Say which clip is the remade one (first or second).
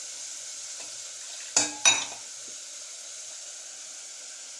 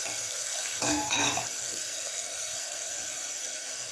second